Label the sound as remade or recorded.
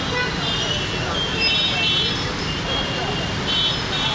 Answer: recorded